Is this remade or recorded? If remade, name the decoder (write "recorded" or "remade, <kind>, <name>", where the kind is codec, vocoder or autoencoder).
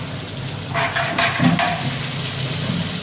recorded